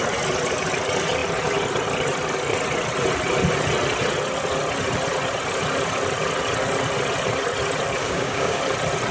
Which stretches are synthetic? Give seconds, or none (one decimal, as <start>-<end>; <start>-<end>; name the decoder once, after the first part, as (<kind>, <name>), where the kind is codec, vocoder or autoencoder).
8.0-8.6 (codec, DAC)